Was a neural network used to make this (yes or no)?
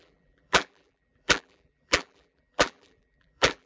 yes